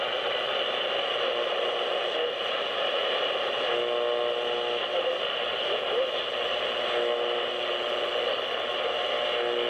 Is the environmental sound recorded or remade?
recorded